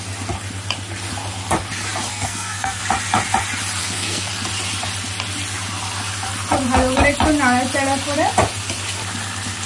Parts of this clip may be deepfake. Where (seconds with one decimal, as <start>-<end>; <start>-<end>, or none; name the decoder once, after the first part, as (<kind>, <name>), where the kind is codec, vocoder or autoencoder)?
2.1-2.8 (codec, SNAC); 3.8-4.3